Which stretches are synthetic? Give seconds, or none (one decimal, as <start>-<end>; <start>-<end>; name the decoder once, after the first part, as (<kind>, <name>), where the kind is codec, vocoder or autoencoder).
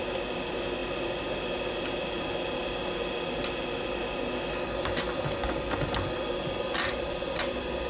0.8-1.7 (vocoder, BigVGAN v2)